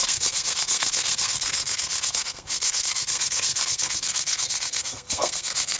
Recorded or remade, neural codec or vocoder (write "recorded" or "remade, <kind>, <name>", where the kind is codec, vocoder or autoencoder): remade, codec, SNAC